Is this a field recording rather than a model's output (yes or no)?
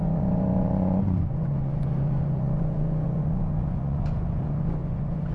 no